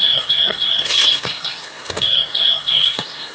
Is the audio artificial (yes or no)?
yes